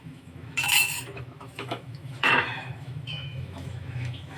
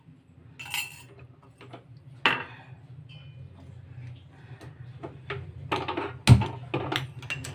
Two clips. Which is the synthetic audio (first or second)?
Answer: first